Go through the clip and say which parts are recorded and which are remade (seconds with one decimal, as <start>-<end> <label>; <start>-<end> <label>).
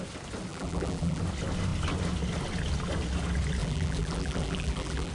0.0-0.5 recorded; 0.5-1.2 remade; 1.2-3.6 recorded; 3.6-5.1 remade